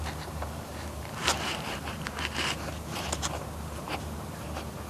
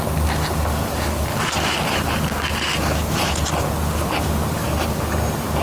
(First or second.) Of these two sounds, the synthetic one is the first